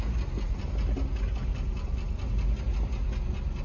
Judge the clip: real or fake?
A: real